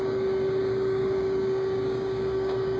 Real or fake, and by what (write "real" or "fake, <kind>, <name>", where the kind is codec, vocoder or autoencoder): fake, codec, DAC